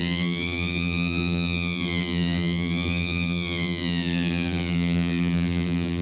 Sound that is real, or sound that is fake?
fake